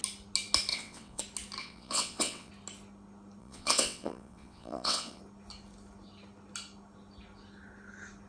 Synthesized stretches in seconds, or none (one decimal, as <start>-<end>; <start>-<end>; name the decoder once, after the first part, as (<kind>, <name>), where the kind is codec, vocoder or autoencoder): 0.7-1.2 (vocoder, WaveNeXt); 1.6-2.5; 3.4-5.2

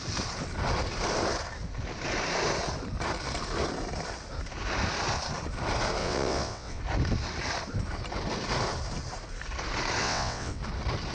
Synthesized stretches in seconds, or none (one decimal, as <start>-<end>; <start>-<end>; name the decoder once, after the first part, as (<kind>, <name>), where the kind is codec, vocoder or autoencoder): 6.0-6.8 (vocoder, WaveNeXt); 10.0-10.6

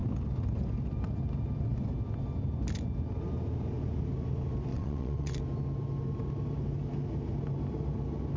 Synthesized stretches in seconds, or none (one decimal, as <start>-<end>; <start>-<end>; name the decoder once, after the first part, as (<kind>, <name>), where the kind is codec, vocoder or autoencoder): 4.7-5.4 (vocoder, WaveNeXt)

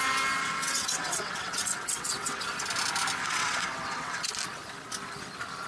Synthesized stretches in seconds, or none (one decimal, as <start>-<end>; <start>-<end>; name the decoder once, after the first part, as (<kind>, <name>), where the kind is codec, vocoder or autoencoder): 0.4-2.4 (vocoder, WaveNeXt); 3.2-4.3

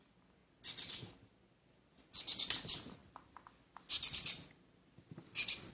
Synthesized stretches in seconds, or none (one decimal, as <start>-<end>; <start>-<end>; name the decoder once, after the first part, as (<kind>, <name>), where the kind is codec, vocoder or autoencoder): none

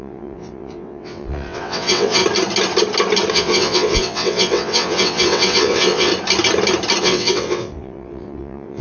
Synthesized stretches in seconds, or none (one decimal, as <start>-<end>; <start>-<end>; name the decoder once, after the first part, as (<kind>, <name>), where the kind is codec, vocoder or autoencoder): 0.0-2.2 (vocoder, WaveNeXt); 3.3-6.1; 7.0-8.8

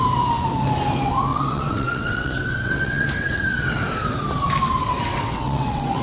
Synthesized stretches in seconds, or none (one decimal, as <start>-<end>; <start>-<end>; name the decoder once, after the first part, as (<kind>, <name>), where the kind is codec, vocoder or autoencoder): 1.3-3.8 (vocoder, WaveNeXt); 5.1-6.0

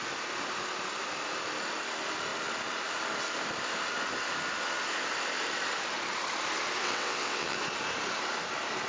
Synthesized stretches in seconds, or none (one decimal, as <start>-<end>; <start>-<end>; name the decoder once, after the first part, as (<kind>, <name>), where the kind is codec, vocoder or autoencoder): 6.8-7.6 (vocoder, WaveNeXt)